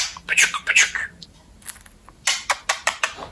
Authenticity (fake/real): real